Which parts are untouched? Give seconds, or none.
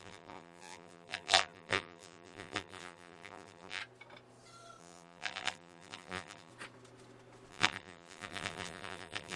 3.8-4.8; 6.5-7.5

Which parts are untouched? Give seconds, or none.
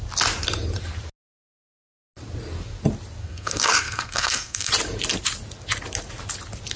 0.0-3.2; 4.7-6.8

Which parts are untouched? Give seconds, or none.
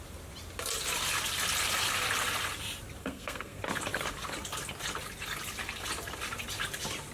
0.0-3.0; 3.6-7.1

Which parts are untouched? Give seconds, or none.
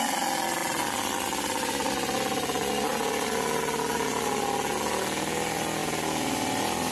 0.0-6.9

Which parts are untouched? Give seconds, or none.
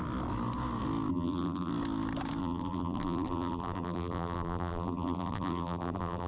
0.0-1.1; 1.7-2.4